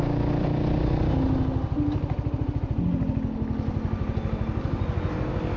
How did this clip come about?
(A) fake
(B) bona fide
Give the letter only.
B